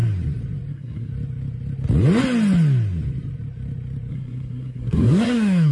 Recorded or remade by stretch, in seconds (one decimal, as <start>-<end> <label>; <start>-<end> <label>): 0.0-0.7 recorded; 0.7-1.1 remade; 1.1-4.1 recorded; 4.1-5.7 remade